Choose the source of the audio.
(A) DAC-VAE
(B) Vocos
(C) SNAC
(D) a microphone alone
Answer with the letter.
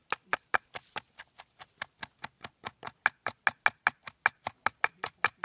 D